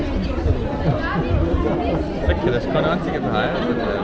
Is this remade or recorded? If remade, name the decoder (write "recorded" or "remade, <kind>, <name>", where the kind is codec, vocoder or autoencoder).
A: recorded